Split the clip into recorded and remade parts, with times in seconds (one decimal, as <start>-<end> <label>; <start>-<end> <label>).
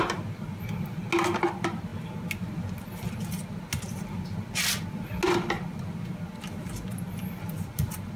0.0-8.2 recorded